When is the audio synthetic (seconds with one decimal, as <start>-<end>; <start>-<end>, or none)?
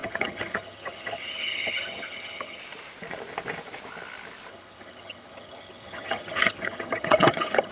0.0-2.6; 4.5-7.7